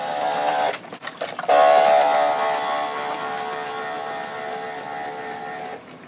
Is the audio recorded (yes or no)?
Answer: yes